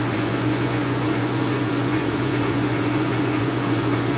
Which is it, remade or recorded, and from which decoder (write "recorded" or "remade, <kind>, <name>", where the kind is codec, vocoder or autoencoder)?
remade, vocoder, Vocos